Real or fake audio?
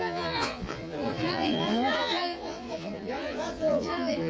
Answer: fake